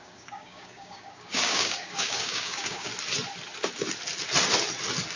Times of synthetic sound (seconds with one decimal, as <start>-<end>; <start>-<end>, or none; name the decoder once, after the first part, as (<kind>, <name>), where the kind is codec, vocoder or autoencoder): 0.0-2.9 (codec, DAC)